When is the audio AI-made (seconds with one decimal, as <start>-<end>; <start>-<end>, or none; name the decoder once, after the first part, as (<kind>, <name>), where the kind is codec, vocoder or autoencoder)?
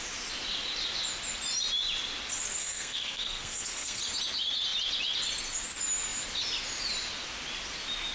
2.6-4.0 (codec, SNAC)